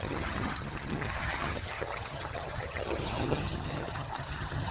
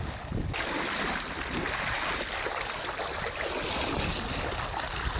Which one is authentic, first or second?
second